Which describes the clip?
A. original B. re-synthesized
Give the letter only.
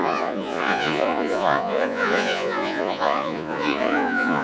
B